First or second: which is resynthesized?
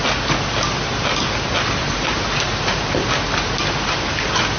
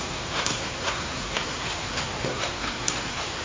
second